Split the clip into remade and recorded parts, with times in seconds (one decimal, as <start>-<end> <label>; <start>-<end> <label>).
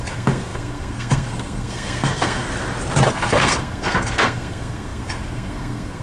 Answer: 0.0-2.5 remade; 2.5-3.1 recorded; 3.1-6.0 remade